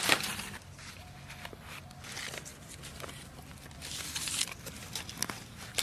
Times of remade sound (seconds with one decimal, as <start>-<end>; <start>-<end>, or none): none